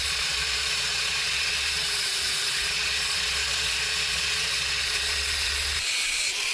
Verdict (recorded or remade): remade